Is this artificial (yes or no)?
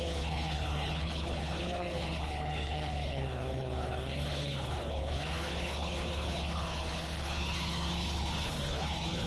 yes